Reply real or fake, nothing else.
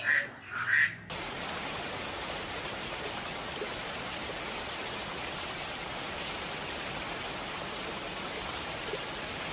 real